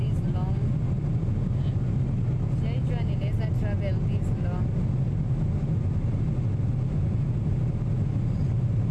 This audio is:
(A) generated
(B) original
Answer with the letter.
B